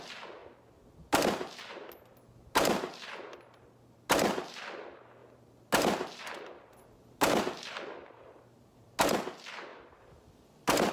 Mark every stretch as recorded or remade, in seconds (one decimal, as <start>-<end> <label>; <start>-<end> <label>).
0.0-10.9 recorded